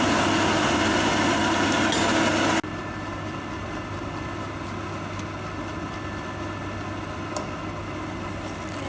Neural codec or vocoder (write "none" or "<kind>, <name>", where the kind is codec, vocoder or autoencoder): none